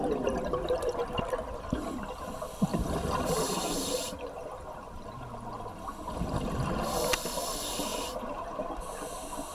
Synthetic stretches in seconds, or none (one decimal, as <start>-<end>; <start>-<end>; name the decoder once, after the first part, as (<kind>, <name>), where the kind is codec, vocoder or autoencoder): 2.7-5.6 (vocoder, BigVGAN v2); 7.9-8.6